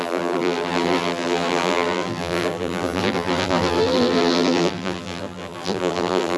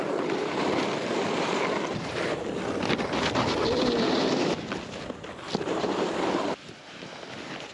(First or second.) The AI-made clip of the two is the first